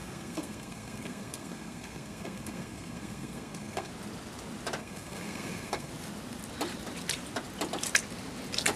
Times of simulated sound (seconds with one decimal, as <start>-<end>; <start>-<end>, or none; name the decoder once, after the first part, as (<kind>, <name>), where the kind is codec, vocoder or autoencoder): 0.0-3.9 (codec, SNAC); 4.8-5.9